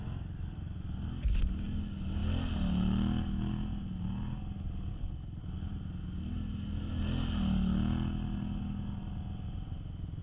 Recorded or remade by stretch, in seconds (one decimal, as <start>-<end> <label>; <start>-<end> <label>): 0.0-4.9 recorded; 4.9-5.4 remade; 5.4-10.2 recorded